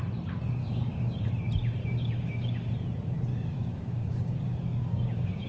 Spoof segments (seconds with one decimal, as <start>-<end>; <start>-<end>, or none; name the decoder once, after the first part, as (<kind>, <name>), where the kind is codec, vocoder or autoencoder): 0.6-1.3 (codec, DAC); 1.8-2.7; 3.3-5.5